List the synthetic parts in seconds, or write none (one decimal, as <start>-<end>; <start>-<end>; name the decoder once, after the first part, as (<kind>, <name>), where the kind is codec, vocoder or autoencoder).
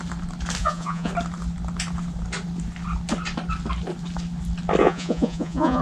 0.6-1.1 (vocoder, Vocos); 4.8-5.8